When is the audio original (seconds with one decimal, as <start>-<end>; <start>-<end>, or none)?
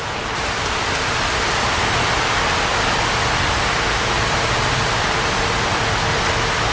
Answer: 0.0-6.7